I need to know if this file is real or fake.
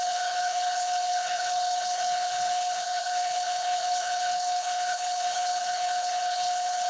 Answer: fake